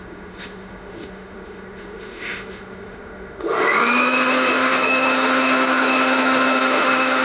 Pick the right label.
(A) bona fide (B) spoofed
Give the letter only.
B